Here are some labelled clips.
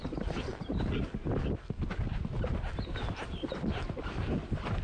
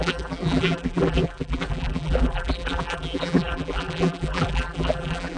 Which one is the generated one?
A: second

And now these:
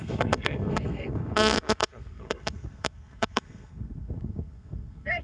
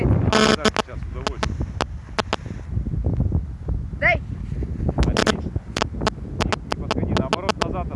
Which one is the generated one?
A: first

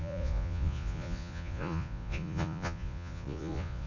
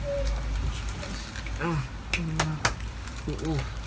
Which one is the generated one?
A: first